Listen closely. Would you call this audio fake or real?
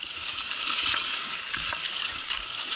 fake